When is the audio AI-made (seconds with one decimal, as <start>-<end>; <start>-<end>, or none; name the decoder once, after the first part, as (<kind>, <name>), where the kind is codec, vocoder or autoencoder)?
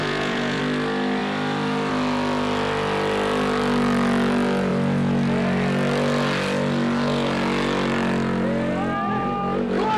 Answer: 0.0-0.6 (vocoder, Vocos)